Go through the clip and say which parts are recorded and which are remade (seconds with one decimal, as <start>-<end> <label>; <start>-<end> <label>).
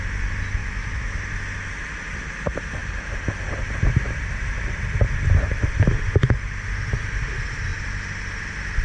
0.0-0.6 recorded; 0.6-1.2 remade; 1.2-8.8 recorded